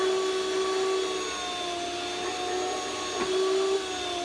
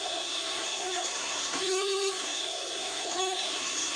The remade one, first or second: second